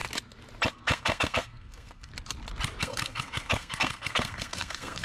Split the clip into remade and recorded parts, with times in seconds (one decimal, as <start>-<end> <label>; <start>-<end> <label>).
0.0-0.7 recorded; 0.7-2.1 remade; 2.1-2.8 recorded; 2.8-5.0 remade